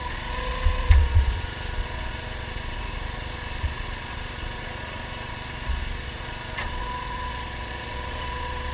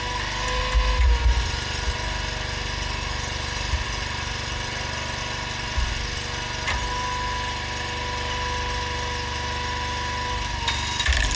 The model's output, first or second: first